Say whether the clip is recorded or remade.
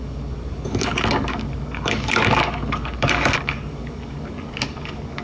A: remade